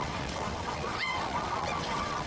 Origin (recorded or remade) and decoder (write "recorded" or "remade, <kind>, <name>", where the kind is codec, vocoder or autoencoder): remade, vocoder, WaveNeXt